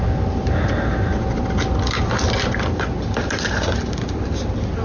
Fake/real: real